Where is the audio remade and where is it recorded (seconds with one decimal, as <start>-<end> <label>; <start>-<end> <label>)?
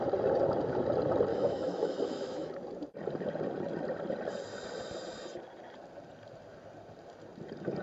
0.0-1.3 recorded; 1.3-2.5 remade; 2.5-7.8 recorded